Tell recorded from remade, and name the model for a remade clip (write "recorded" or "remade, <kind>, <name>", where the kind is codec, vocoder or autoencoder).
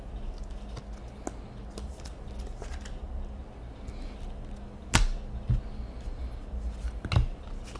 recorded